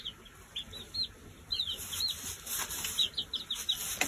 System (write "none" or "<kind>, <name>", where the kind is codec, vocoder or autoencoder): none